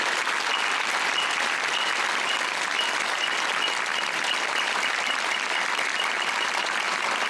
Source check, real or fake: real